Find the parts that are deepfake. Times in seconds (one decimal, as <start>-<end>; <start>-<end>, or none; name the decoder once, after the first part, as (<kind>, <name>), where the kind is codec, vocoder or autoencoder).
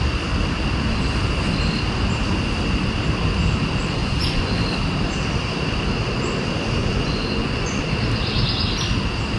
4.0-4.6 (vocoder, Vocos); 6.8-7.8